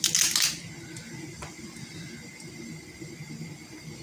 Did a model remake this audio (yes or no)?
no